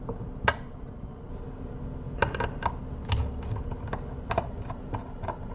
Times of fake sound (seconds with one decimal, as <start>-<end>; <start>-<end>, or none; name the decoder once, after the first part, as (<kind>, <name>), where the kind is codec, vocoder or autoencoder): 0.5-1.3 (vocoder, Vocos)